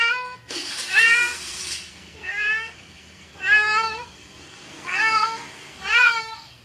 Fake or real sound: fake